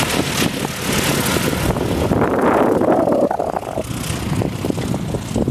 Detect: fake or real real